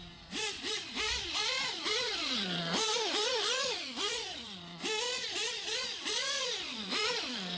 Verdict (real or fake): fake